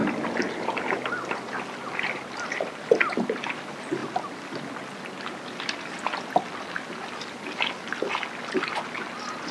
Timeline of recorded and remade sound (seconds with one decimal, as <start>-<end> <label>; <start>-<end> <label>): 0.0-9.5 recorded